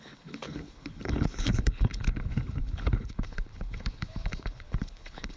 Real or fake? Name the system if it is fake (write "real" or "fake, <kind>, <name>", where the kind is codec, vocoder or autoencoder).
fake, codec, HILCodec